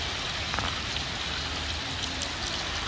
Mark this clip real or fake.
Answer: real